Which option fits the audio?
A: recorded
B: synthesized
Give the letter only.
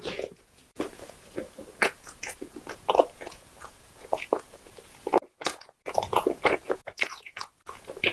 B